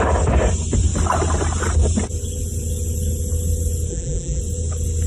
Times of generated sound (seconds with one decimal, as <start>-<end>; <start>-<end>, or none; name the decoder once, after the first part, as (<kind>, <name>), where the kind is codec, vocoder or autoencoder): 3.9-4.4 (vocoder, BigVGAN v2)

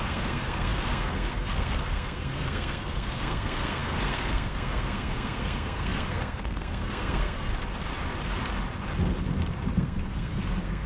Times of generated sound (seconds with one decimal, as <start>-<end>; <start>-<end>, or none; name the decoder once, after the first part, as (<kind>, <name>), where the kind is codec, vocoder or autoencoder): 0.0-7.5 (codec, SNAC); 9.7-10.9

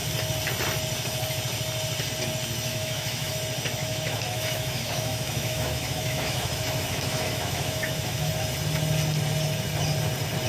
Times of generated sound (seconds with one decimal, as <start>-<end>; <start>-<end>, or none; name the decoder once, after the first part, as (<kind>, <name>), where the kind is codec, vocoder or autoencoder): 2.7-3.3 (autoencoder, DAC-VAE); 3.8-8.3

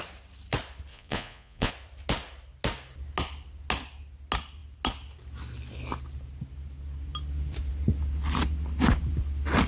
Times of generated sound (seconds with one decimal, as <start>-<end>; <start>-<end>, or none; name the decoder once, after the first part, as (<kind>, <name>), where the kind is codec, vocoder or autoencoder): 0.9-1.7 (vocoder, Vocos)

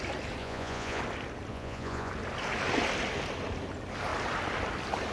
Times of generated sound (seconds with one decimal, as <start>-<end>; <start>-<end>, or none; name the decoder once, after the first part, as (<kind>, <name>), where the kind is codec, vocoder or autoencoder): 0.4-1.0 (vocoder, Vocos); 1.5-2.1

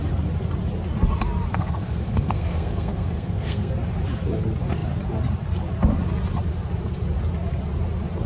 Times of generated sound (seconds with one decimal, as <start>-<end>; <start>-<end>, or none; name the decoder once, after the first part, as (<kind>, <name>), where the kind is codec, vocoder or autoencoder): 1.5-3.7 (codec, SNAC)

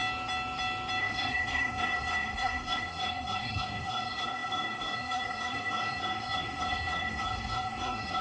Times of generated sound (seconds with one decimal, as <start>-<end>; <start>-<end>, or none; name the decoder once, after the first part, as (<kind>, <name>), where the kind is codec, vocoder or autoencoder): 1.0-8.2 (codec, SNAC)